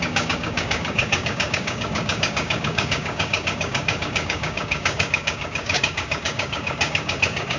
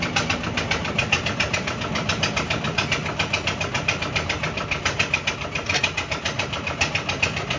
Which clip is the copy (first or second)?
first